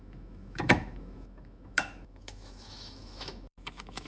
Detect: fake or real fake